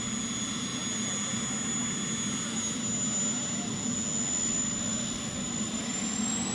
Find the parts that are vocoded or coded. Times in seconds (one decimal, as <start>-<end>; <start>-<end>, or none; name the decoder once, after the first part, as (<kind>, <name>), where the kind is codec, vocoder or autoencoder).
none